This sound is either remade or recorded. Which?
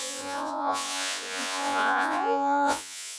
remade